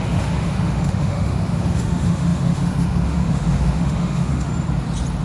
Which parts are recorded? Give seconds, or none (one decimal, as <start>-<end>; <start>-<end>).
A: 4.5-5.2